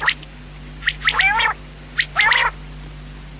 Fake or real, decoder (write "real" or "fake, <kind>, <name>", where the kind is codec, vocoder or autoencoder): real